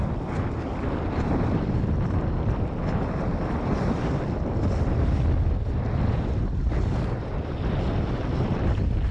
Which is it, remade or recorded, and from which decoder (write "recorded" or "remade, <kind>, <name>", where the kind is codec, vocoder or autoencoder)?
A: recorded